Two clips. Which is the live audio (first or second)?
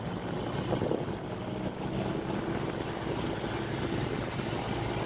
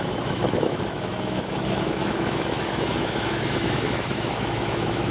first